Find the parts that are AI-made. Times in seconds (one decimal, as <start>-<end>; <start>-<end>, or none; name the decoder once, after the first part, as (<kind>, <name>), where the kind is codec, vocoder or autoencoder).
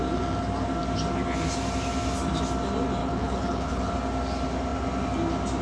3.0-3.9 (codec, HILCodec)